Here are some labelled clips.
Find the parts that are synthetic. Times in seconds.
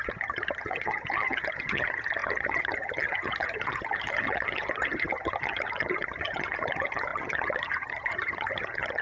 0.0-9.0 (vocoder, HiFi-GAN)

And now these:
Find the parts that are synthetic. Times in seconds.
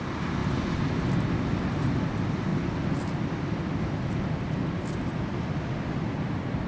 none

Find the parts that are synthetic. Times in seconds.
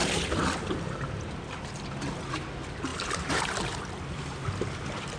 2.9-3.9 (vocoder, BigVGAN v2)